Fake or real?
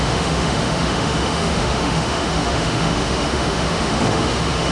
fake